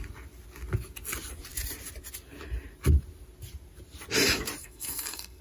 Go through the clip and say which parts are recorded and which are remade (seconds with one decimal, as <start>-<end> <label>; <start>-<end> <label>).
0.0-4.6 recorded; 4.6-5.4 remade